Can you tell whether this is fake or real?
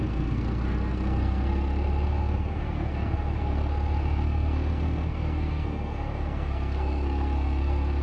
fake